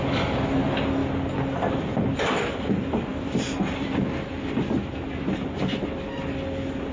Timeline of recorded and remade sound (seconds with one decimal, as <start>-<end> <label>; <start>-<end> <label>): 0.0-6.9 recorded